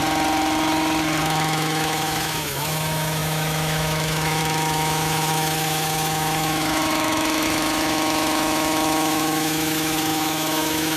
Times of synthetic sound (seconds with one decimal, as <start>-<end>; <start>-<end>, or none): 1.2-11.0